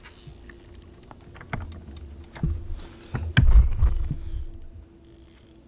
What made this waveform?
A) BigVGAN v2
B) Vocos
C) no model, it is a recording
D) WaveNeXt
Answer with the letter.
C